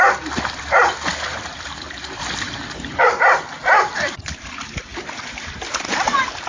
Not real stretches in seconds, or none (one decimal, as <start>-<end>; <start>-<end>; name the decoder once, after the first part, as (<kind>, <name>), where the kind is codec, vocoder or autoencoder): 0.0-4.9 (vocoder, BigVGAN v2)